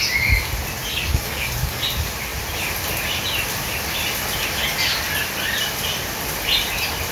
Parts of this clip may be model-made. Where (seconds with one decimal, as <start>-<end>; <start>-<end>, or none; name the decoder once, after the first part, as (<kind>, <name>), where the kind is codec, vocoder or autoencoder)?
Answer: 0.9-1.8 (codec, DAC)